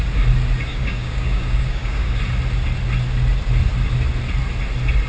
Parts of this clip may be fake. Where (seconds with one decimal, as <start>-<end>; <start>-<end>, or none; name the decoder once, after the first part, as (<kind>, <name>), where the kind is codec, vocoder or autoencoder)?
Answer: 0.7-2.2 (codec, DAC)